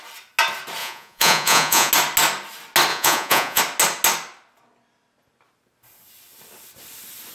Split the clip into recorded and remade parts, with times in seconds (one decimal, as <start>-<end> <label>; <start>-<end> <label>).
0.0-0.8 recorded; 0.8-1.9 remade; 1.9-2.9 recorded; 2.9-3.6 remade; 3.6-7.3 recorded